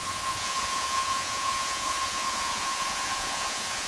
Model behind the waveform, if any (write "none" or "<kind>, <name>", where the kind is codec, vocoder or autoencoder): vocoder, Vocos